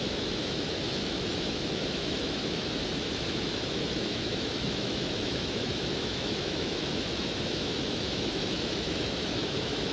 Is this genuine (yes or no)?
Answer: no